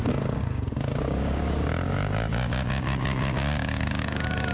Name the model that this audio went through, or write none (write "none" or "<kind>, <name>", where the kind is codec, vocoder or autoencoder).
codec, DAC